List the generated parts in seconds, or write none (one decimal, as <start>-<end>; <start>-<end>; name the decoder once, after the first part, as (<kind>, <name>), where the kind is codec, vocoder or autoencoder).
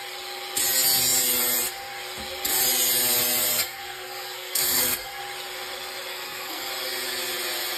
3.5-5.2 (codec, SNAC); 6.1-6.7